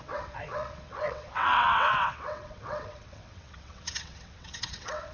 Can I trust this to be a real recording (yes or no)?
no